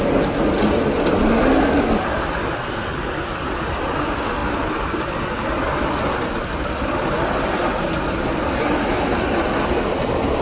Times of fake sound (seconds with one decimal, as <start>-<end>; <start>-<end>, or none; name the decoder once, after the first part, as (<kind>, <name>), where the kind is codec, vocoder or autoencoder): none